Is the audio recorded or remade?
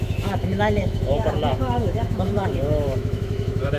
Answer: remade